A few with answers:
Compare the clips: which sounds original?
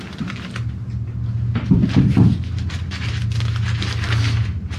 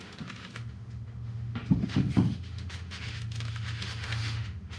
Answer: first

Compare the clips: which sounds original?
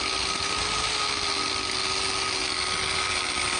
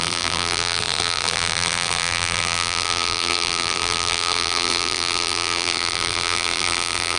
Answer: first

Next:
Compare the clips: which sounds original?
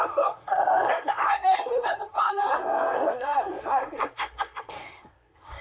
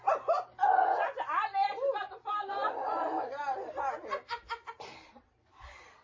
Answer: second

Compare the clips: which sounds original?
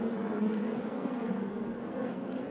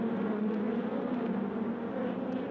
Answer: second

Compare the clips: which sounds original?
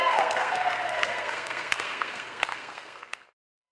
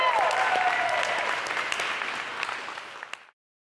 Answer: second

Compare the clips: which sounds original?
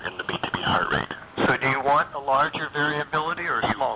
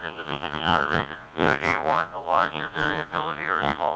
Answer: first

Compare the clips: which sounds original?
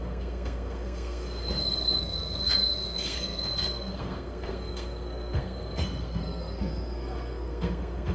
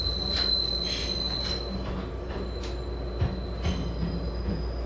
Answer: second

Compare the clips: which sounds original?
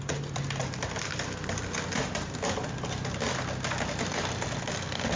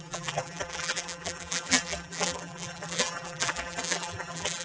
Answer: first